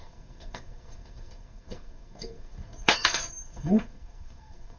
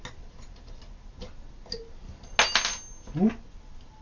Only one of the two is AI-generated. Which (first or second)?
first